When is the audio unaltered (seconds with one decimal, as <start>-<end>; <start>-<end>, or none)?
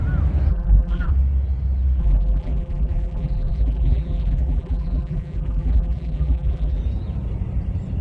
0.0-0.5; 1.1-2.0; 6.8-8.0